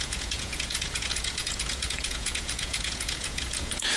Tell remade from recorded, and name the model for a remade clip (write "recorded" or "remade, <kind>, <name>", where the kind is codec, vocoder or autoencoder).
remade, vocoder, Vocos